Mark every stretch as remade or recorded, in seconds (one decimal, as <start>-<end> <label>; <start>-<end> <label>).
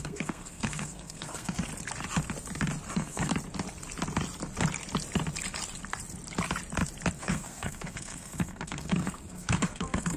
0.0-1.7 remade; 1.7-2.9 recorded; 2.9-3.3 remade; 3.3-7.2 recorded; 7.2-10.2 remade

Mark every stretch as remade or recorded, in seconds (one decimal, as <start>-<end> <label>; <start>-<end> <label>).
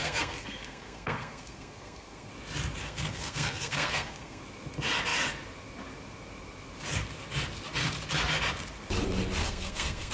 0.0-2.3 remade; 2.3-2.8 recorded; 2.8-4.4 remade; 4.4-9.4 recorded; 9.4-10.1 remade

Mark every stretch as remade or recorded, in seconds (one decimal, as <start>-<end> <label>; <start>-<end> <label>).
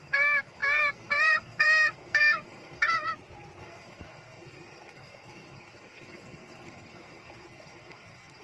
0.0-3.1 remade; 3.1-3.6 recorded; 3.6-8.4 remade